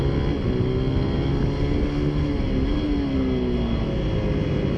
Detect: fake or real real